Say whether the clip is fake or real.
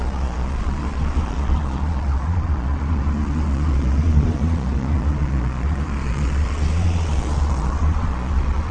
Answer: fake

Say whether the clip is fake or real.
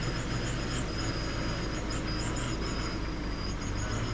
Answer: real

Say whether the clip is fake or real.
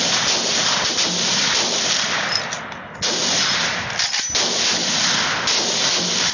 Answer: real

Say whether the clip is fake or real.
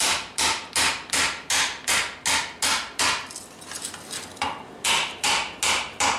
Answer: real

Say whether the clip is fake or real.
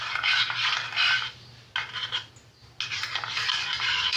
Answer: real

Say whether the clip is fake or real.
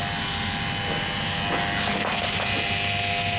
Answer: real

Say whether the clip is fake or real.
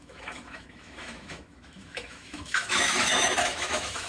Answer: fake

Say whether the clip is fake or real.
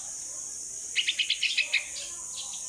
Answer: real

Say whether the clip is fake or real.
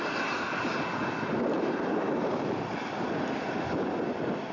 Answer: real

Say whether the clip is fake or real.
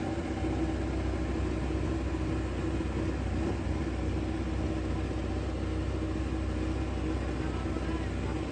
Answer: real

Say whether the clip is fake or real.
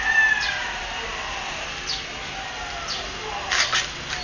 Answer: real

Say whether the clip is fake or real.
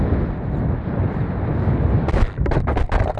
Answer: real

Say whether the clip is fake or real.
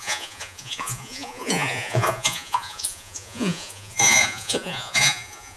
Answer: fake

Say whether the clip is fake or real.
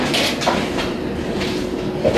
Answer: real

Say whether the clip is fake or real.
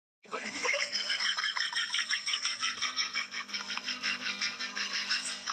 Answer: fake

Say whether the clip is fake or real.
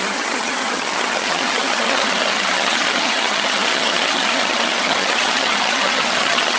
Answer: fake